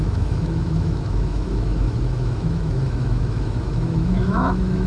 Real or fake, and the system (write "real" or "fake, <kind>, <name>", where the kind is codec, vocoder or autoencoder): fake, autoencoder, DAC-VAE